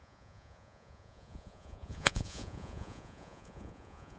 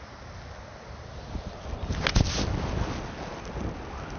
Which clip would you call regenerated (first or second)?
first